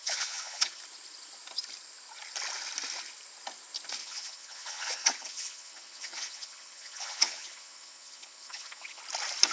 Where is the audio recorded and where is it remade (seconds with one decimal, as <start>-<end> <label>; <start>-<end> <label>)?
0.0-0.8 remade; 0.8-4.0 recorded; 4.0-9.0 remade; 9.0-9.5 recorded